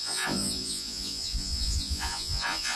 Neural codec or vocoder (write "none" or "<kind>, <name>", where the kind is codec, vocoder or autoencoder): vocoder, Vocos